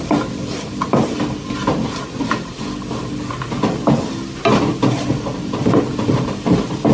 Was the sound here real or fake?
real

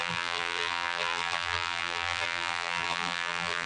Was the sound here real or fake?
fake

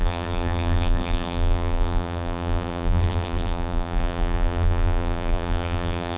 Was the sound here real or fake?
fake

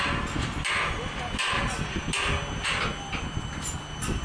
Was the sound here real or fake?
real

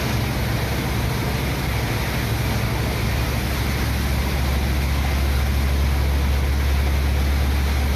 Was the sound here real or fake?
real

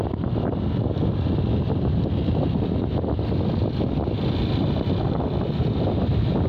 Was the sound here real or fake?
real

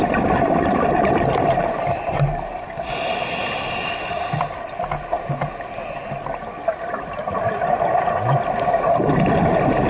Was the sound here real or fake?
real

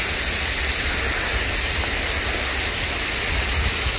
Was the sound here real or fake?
real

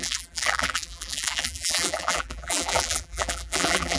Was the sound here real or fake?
fake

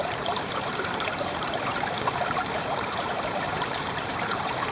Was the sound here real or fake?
fake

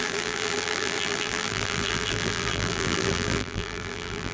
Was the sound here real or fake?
fake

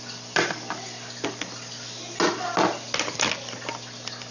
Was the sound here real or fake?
real